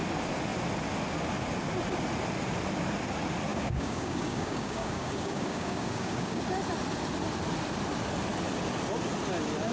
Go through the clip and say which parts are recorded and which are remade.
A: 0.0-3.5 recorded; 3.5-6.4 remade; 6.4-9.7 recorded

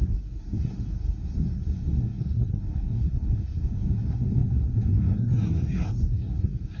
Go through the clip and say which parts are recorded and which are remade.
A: 0.0-6.8 remade

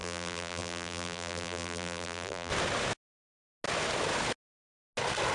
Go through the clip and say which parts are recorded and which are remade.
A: 0.0-2.5 remade; 2.5-5.3 recorded

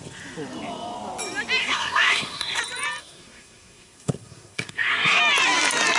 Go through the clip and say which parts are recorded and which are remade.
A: 0.0-1.6 recorded; 1.6-2.6 remade; 2.6-3.0 recorded; 3.0-5.2 remade; 5.2-6.0 recorded